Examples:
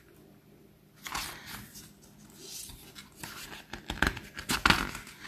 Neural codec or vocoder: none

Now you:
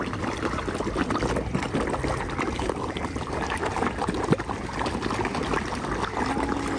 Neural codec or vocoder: none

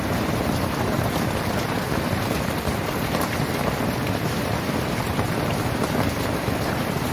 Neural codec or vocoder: vocoder, BigVGAN v2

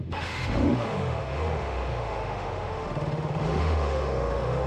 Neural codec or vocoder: autoencoder, DAC-VAE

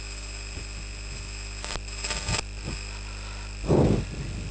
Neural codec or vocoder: none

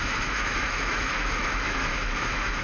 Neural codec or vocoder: autoencoder, DAC-VAE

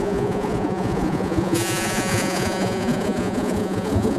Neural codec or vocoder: vocoder, Vocos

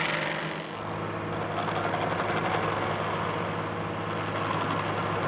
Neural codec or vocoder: none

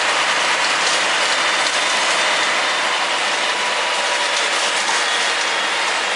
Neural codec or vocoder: none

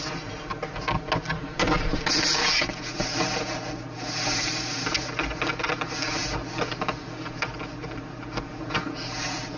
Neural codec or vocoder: none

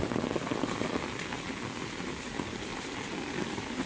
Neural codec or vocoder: none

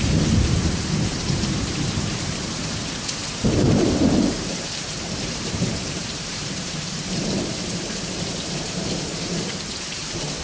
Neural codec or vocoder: vocoder, BigVGAN v2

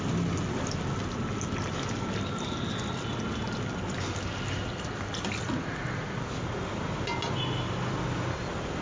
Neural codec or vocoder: none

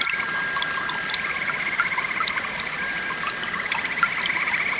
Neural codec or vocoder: none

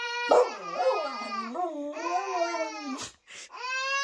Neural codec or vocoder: none